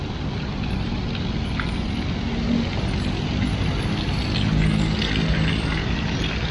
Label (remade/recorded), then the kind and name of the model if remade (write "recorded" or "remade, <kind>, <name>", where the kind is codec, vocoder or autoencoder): recorded